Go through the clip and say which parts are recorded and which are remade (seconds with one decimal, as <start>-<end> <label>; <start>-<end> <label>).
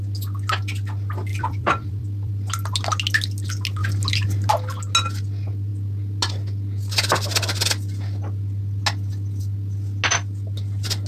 0.0-1.3 recorded; 1.3-2.3 remade; 2.3-11.1 recorded